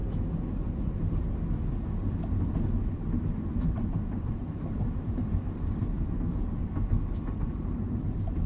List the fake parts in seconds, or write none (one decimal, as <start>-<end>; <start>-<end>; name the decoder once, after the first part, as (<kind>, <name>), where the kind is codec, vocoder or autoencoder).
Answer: 3.2-6.6 (vocoder, BigVGAN v2); 7.3-8.5